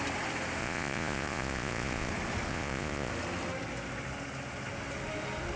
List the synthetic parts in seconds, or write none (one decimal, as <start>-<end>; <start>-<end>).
0.6-2.1; 2.5-3.1